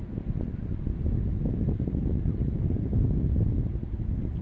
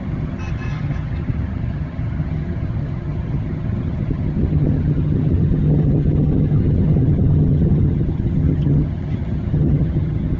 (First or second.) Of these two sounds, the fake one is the second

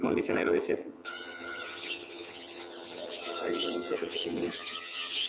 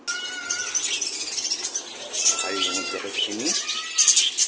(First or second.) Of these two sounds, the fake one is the first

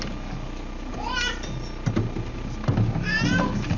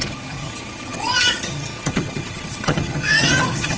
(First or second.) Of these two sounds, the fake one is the second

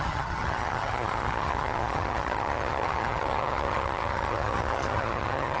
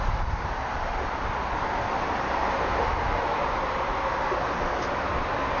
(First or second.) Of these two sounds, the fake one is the first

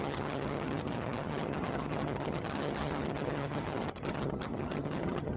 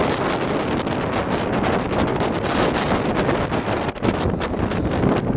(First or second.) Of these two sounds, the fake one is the first